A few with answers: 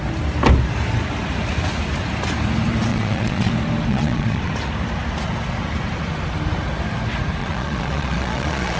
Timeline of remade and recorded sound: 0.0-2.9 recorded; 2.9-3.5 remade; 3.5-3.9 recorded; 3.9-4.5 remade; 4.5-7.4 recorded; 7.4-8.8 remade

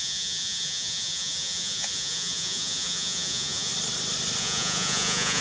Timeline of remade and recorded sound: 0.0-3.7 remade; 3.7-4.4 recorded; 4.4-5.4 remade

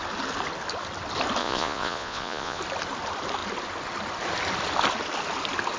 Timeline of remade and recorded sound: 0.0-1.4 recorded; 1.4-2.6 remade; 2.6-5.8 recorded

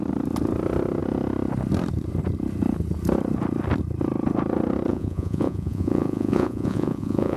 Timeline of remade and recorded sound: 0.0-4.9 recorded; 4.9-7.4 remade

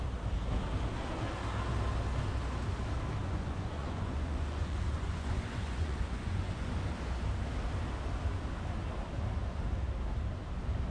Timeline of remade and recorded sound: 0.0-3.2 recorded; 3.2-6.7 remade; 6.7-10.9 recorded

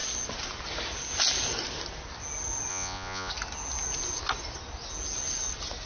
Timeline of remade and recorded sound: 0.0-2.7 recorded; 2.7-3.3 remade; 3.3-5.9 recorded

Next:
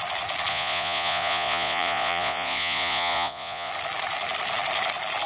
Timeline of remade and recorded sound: 0.0-0.5 recorded; 0.5-3.7 remade; 3.7-5.3 recorded